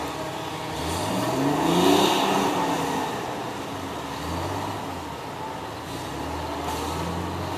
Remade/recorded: recorded